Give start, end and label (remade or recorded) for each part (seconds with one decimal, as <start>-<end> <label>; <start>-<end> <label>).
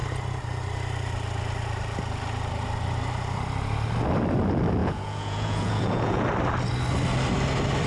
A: 0.0-4.8 recorded; 4.8-6.2 remade; 6.2-7.9 recorded